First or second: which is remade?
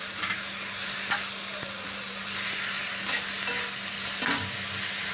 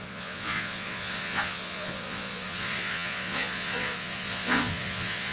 second